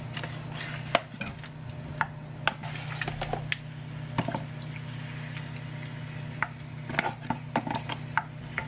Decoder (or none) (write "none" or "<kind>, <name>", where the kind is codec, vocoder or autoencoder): none